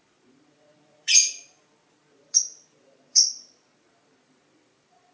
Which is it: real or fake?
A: fake